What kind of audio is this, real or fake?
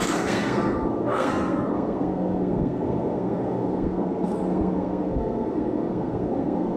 fake